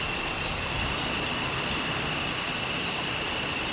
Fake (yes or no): no